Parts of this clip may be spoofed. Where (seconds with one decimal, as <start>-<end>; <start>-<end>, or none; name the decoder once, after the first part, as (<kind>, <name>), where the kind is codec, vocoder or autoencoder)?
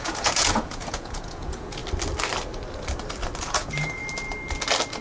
0.0-1.8 (vocoder, Vocos); 3.4-4.0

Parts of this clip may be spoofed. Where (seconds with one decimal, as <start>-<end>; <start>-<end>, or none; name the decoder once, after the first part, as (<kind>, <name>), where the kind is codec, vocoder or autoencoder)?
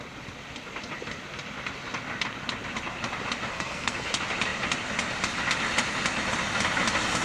3.5-4.1 (codec, SNAC)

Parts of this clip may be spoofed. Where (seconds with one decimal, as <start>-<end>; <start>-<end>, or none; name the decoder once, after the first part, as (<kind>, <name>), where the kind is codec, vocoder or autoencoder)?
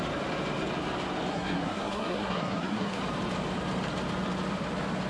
1.3-3.0 (codec, SNAC)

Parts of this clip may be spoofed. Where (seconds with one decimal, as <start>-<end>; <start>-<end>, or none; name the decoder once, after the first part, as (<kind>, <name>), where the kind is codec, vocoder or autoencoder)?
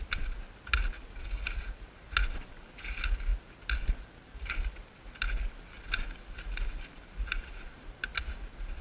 none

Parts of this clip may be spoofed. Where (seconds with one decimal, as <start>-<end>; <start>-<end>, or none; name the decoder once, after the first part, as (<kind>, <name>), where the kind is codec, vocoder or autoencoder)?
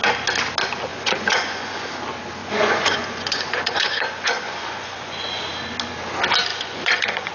0.9-1.9 (vocoder, Vocos); 2.4-5.4; 6.5-7.3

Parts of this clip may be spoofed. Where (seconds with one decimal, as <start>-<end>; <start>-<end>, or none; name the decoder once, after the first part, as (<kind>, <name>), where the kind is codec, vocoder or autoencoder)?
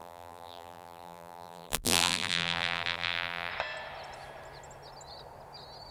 0.0-3.5 (vocoder, BigVGAN v2)